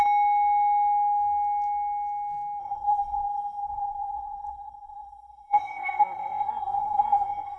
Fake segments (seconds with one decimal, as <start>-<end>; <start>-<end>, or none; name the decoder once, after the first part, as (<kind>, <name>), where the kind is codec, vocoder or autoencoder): 2.6-7.6 (codec, SNAC)